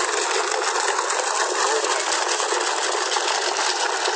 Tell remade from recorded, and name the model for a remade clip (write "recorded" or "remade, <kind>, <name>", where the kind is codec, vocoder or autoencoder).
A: recorded